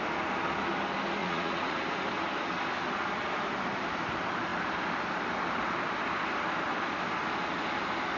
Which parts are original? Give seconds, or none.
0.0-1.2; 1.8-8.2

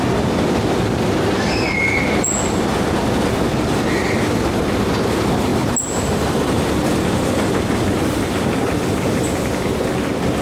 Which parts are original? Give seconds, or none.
0.0-10.4

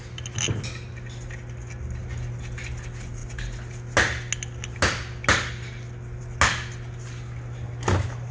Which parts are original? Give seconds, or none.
0.0-8.3